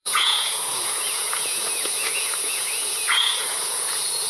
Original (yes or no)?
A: no